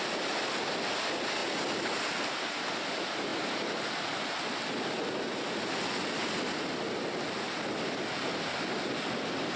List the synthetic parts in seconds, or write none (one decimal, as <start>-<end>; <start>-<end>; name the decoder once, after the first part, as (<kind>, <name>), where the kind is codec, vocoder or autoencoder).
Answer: none

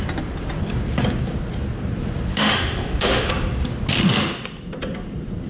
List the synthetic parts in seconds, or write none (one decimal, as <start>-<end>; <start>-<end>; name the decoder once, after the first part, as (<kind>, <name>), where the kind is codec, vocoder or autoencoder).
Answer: 2.3-3.3 (autoencoder, DAC-VAE)

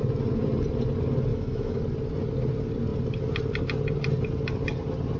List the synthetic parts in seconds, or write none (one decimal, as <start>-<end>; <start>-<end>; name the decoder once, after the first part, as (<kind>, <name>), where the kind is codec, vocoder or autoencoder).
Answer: 1.3-1.8 (autoencoder, DAC-VAE)